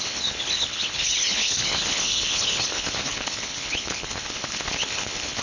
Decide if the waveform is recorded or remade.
remade